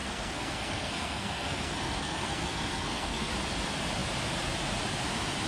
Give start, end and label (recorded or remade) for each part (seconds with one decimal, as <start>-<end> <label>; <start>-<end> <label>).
0.0-3.3 remade; 3.3-5.5 recorded